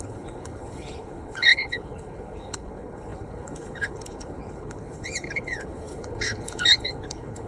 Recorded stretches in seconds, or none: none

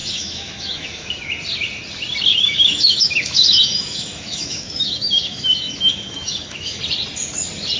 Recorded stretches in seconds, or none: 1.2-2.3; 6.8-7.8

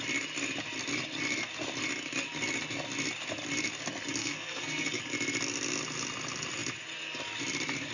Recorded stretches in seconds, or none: 0.0-4.2; 5.0-7.9

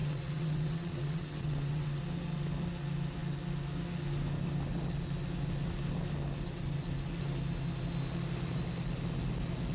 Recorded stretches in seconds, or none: 2.0-9.7

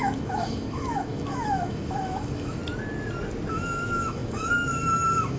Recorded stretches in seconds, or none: 2.6-3.5

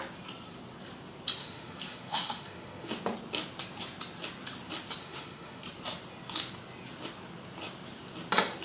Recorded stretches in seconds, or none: 0.0-1.4; 2.9-5.0; 5.6-8.6

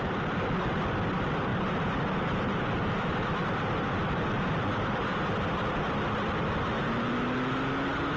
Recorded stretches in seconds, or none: 0.0-8.2